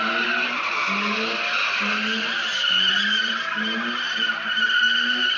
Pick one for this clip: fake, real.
real